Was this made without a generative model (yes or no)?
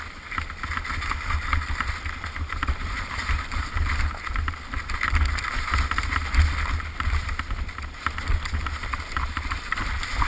yes